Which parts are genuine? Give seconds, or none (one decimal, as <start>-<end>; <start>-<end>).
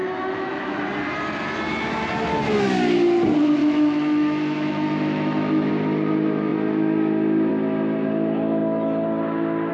0.8-3.6; 5.7-9.7